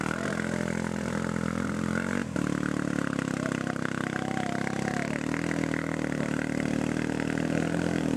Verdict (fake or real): fake